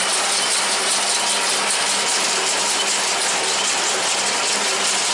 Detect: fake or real real